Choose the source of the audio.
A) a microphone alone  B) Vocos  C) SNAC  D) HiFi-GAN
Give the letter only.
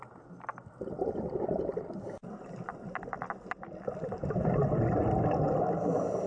A